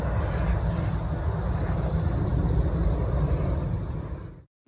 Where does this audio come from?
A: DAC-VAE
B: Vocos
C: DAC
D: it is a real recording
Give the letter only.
D